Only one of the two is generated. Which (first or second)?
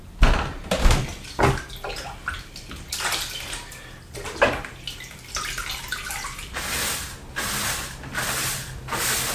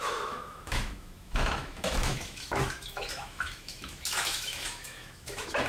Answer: second